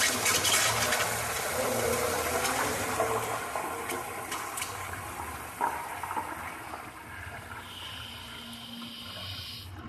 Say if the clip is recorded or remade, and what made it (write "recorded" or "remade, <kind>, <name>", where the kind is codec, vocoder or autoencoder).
recorded